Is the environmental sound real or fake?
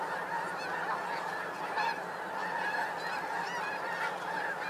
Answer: real